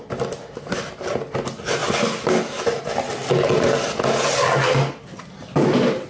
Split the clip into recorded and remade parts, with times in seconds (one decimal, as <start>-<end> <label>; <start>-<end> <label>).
0.0-6.1 recorded